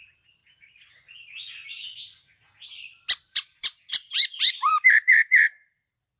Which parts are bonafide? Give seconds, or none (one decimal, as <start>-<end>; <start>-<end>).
0.4-3.3